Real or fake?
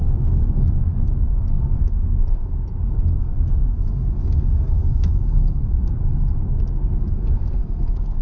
fake